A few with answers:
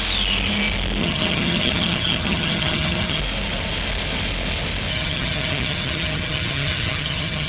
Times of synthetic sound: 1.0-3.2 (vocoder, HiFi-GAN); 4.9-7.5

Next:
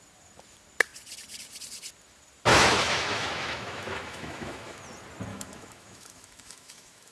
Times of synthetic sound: 2.5-4.8 (autoencoder, DAC-VAE); 5.3-7.1